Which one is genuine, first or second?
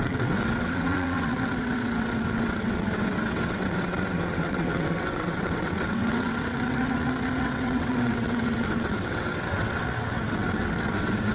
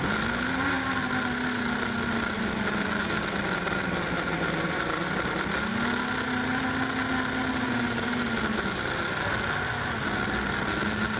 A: second